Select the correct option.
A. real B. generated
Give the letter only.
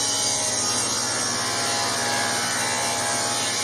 A